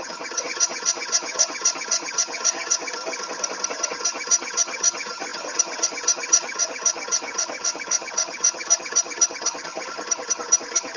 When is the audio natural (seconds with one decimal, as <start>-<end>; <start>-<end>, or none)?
2.8-3.7